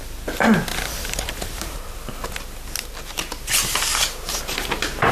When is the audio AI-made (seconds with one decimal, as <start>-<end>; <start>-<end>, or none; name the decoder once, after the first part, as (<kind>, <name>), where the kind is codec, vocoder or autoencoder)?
0.7-1.9 (vocoder, BigVGAN v2); 3.9-4.4